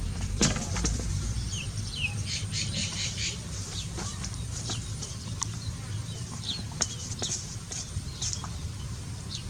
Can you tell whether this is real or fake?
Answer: fake